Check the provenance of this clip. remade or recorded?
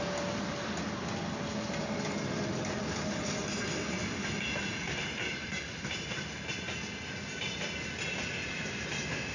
recorded